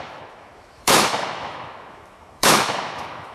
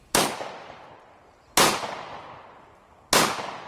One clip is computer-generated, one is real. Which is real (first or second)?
second